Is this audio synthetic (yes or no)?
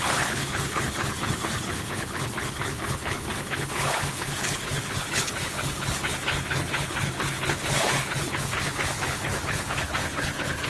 yes